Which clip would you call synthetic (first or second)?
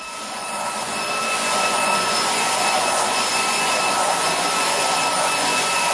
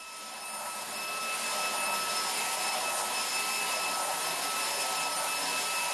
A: first